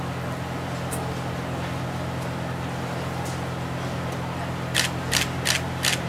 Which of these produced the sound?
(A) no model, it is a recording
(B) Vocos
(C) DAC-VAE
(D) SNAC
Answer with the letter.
A